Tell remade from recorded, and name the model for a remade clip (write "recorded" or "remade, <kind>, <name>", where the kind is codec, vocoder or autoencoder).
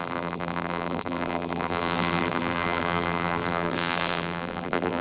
remade, vocoder, BigVGAN v2